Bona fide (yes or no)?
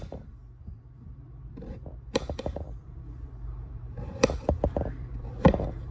no